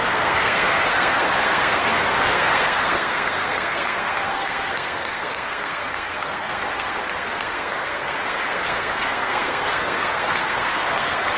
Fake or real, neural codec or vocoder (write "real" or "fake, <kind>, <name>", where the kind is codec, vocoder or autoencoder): fake, codec, SNAC